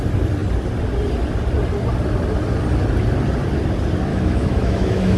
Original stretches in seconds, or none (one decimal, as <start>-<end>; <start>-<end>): 0.0-4.1